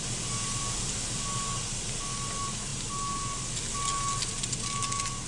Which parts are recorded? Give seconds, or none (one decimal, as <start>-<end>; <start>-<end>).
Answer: 0.0-5.3